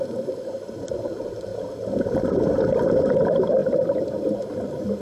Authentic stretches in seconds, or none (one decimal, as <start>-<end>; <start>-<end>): 0.0-5.0